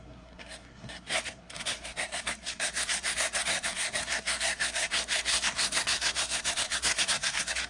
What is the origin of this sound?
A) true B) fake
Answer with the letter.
B